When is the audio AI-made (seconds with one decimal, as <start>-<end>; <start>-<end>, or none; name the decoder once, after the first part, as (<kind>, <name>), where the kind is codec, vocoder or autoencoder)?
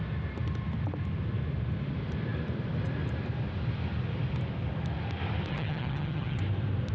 5.5-6.4 (vocoder, HiFi-GAN)